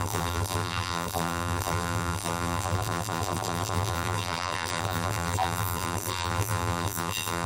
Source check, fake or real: fake